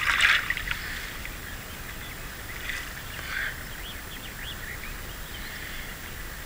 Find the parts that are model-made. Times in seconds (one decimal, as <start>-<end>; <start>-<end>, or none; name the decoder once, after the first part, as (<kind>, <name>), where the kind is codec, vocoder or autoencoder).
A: none